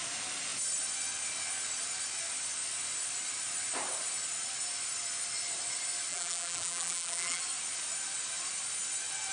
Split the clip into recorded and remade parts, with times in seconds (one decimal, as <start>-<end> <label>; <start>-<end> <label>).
0.0-6.1 recorded; 6.1-7.4 remade; 7.4-9.3 recorded